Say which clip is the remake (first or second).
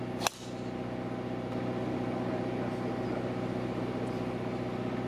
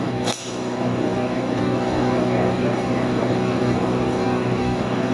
second